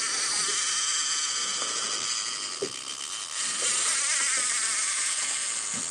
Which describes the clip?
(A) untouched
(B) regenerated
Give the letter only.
A